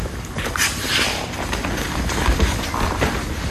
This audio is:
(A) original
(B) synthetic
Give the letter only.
A